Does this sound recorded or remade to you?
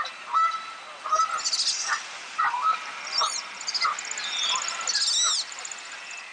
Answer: recorded